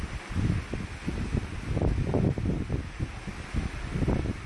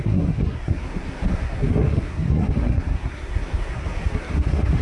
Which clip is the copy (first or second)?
second